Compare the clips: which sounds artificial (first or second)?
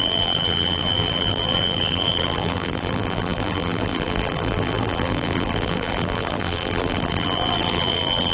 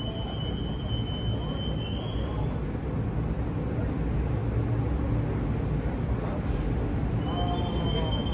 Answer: first